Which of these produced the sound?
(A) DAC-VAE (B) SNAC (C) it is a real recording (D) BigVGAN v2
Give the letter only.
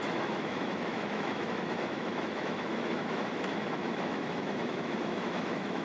A